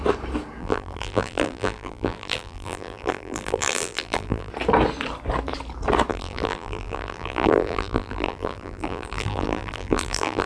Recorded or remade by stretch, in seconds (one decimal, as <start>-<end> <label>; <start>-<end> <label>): 0.0-0.6 recorded; 0.6-4.5 remade; 4.5-6.1 recorded; 6.1-10.5 remade